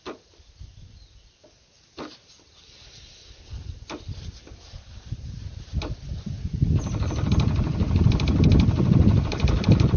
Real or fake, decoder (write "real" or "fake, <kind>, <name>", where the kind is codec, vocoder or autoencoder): real